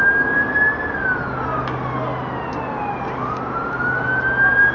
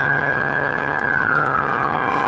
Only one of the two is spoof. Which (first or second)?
second